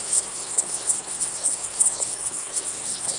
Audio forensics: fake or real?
fake